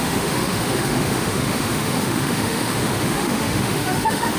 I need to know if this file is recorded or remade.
remade